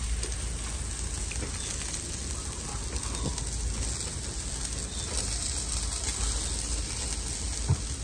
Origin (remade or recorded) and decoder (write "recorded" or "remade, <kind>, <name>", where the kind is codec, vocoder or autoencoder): recorded